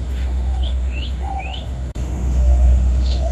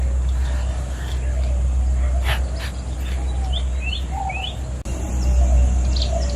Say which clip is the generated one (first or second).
first